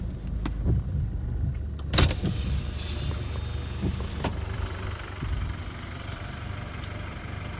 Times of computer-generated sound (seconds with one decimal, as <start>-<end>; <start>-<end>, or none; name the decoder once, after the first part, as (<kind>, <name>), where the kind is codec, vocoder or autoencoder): 4.3-6.5 (vocoder, BigVGAN v2)